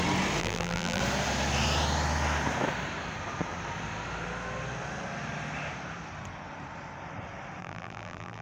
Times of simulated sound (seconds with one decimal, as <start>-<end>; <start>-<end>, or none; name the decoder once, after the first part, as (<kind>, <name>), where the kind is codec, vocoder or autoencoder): 0.4-1.0 (vocoder, BigVGAN v2); 7.6-8.4